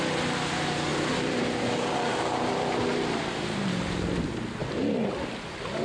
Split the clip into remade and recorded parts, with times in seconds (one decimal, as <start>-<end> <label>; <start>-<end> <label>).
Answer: 0.0-0.9 recorded; 0.9-3.7 remade; 3.7-5.8 recorded